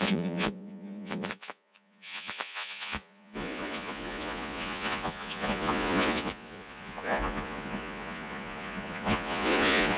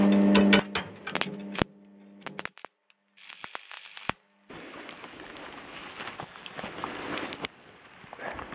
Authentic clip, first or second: second